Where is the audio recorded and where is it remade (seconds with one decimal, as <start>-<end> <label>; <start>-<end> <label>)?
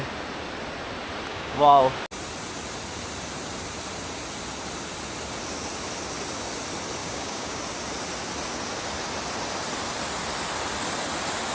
0.0-1.3 recorded; 1.3-1.8 remade; 1.8-7.0 recorded; 7.0-7.6 remade; 7.6-11.5 recorded